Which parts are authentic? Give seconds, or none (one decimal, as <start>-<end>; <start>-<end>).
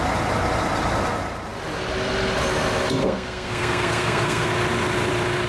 0.0-3.0; 4.5-5.5